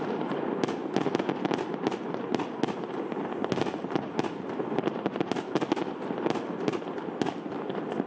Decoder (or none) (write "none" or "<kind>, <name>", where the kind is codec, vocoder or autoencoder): none